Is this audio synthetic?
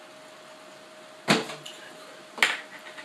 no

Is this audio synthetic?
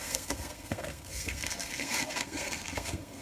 yes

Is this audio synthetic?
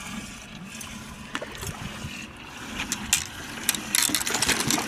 no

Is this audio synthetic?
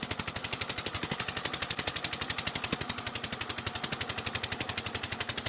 no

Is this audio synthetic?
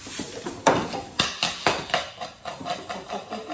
no